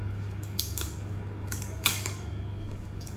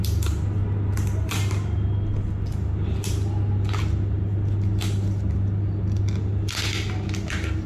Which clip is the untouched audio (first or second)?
second